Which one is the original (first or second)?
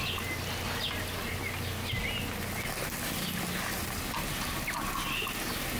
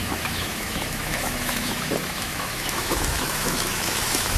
first